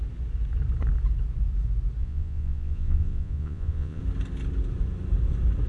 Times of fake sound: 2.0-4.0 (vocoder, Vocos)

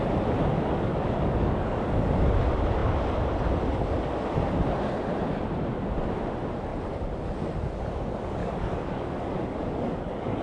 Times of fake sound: 0.5-2.0 (codec, DAC); 8.4-10.4

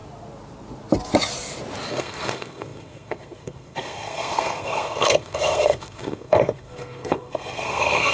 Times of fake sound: 1.9-8.1 (codec, SNAC)

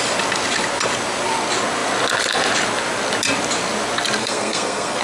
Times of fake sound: 4.2-5.0 (codec, SNAC)

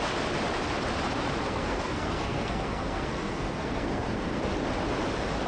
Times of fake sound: 1.4-4.4 (codec, SNAC)